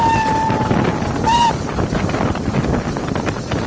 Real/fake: real